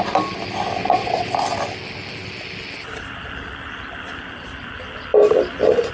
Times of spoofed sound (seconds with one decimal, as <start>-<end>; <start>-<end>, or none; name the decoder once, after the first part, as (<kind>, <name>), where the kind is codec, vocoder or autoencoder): 0.8-1.3 (vocoder, WaveNeXt)